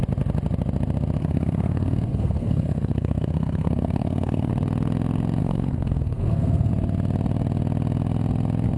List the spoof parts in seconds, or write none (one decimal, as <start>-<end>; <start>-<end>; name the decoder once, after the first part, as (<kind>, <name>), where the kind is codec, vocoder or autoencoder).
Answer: 1.2-4.5 (codec, SNAC); 5.4-6.7